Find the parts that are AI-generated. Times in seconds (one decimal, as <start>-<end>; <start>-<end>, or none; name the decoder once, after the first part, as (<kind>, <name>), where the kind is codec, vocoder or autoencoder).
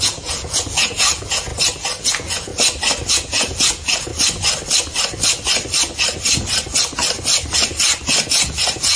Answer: 0.0-1.5 (vocoder, Vocos); 2.0-2.5; 3.1-4.1; 8.3-9.0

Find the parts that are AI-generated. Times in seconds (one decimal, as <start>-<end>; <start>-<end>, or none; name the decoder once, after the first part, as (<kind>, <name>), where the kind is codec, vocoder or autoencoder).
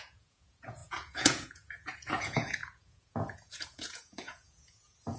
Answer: 0.0-5.2 (vocoder, Vocos)